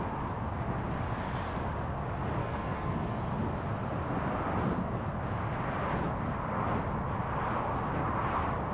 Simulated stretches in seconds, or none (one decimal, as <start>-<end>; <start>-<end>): 2.4-3.2